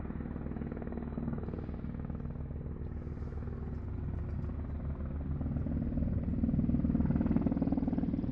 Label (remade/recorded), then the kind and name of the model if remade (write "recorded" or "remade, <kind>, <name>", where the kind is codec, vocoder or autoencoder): recorded